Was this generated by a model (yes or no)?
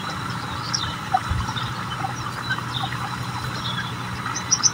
no